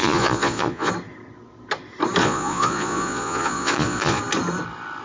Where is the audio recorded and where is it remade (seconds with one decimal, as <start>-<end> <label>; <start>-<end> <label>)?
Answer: 0.0-0.9 remade; 0.9-2.2 recorded; 2.2-4.2 remade; 4.2-5.0 recorded